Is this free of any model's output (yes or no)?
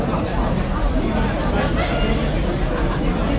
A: yes